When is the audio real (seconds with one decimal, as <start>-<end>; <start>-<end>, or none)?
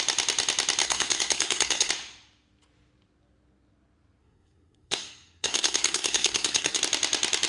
0.0-0.8; 1.9-4.2; 6.8-7.5